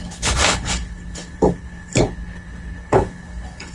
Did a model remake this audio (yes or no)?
yes